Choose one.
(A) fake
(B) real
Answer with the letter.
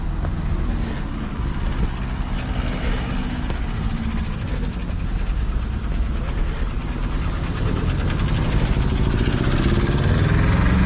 B